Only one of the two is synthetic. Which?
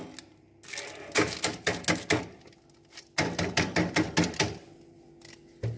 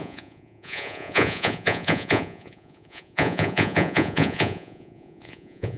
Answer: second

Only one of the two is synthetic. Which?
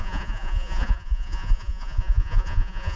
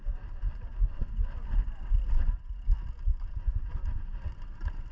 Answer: first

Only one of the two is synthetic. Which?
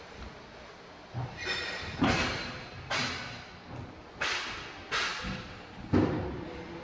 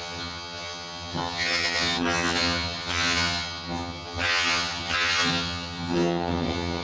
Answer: second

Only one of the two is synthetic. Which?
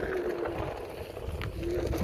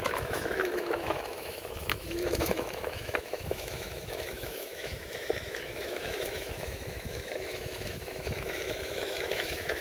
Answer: second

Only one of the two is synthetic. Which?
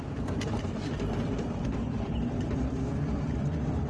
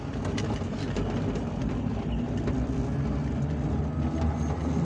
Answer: first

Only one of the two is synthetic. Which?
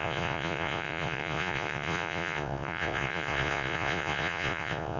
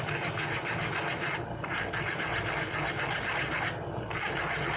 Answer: first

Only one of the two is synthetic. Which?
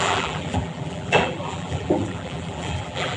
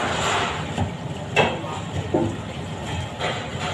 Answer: first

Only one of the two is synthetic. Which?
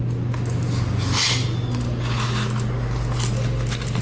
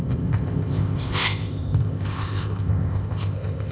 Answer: second